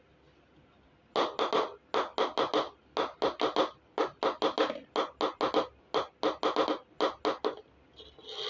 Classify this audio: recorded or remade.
recorded